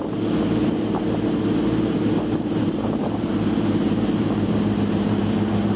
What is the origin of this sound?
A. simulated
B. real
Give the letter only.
A